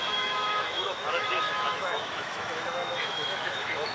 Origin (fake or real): fake